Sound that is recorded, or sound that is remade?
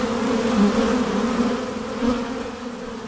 recorded